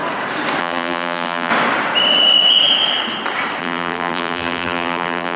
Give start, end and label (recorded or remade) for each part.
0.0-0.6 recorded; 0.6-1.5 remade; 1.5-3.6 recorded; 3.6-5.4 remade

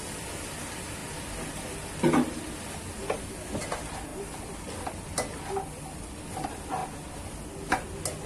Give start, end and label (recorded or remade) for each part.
0.0-8.3 recorded

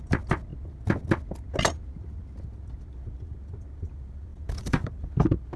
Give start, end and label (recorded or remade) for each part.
0.0-4.3 recorded; 4.3-5.1 remade; 5.1-5.6 recorded

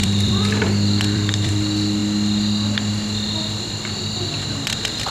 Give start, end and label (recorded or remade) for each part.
0.0-2.0 remade; 2.0-5.1 recorded

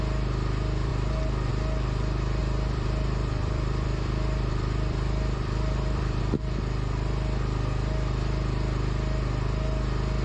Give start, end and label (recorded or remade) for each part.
0.0-2.4 recorded; 2.4-6.2 remade; 6.2-10.2 recorded